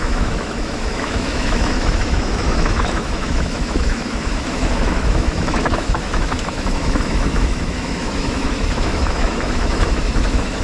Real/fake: fake